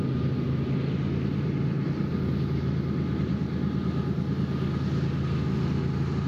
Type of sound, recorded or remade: recorded